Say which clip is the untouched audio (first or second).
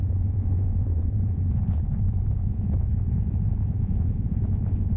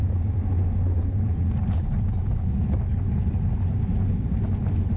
second